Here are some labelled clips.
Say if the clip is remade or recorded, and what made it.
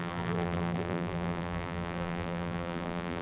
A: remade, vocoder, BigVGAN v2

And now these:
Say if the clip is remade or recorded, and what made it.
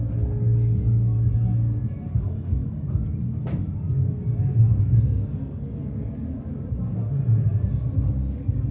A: recorded